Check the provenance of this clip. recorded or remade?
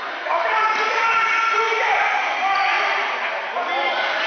recorded